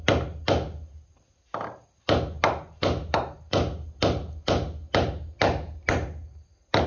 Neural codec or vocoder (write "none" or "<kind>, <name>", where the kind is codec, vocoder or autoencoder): none